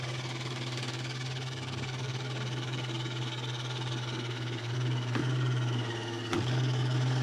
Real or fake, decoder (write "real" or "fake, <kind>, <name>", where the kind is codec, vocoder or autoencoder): fake, codec, DAC